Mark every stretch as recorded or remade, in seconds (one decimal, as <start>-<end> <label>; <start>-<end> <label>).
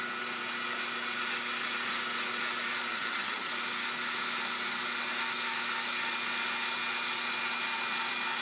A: 0.0-2.9 recorded; 2.9-3.5 remade; 3.5-8.4 recorded